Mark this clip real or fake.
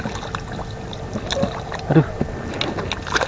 real